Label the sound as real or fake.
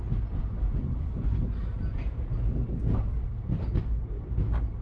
real